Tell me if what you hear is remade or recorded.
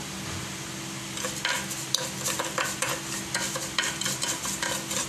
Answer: recorded